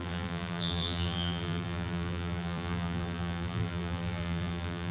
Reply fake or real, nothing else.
fake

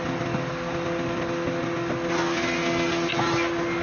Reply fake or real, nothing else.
real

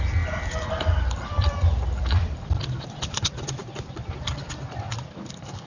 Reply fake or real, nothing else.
fake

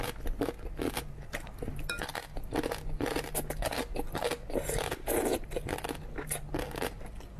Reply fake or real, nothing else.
real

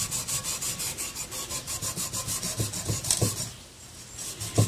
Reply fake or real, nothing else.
real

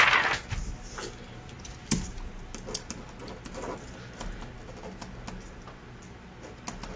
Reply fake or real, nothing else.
real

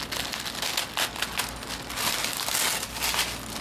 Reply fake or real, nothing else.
real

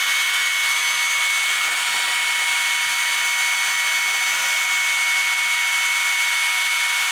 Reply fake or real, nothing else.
real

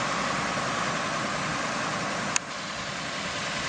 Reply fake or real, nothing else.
fake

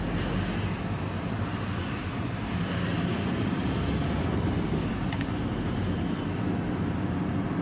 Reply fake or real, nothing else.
real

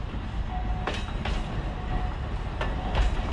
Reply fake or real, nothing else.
real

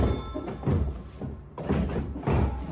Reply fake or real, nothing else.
fake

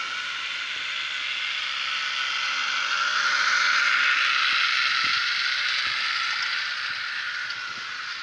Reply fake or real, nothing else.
real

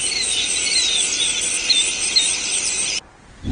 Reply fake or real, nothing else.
real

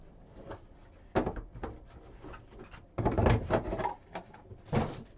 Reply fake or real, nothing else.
real